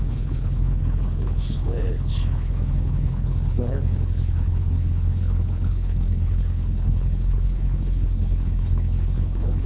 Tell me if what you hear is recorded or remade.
remade